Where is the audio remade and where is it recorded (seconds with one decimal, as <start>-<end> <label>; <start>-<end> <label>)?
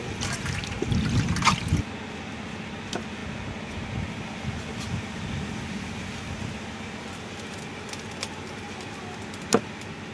0.0-10.1 recorded